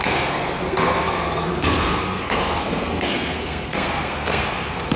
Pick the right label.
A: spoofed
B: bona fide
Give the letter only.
A